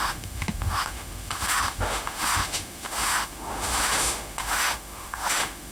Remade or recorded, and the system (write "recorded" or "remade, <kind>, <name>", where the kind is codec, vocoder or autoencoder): remade, autoencoder, DAC-VAE